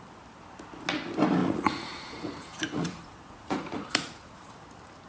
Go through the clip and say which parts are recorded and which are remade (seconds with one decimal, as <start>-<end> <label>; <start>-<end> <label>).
0.0-1.4 recorded; 1.4-4.5 remade; 4.5-5.1 recorded